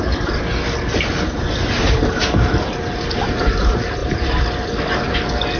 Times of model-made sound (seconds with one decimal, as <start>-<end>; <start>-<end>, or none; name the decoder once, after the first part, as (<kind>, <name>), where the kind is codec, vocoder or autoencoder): none